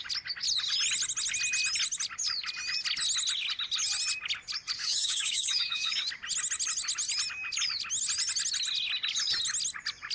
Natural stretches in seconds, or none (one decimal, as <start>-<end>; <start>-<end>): 0.0-4.8; 6.0-10.1